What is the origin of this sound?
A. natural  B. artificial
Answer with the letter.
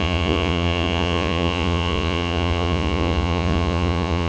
B